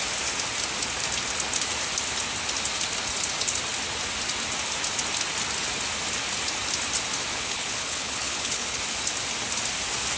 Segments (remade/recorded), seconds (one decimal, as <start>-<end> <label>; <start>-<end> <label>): 0.0-7.3 recorded; 7.3-8.8 remade; 8.8-10.2 recorded